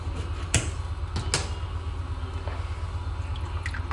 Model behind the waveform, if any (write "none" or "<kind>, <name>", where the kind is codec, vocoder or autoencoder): none